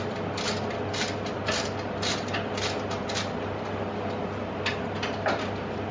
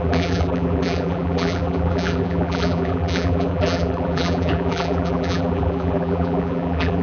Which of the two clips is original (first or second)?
first